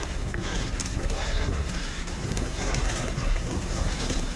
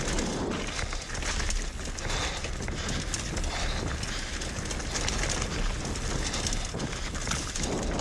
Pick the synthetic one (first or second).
first